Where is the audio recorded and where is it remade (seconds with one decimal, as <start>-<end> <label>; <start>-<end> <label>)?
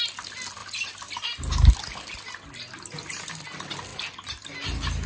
0.0-5.1 recorded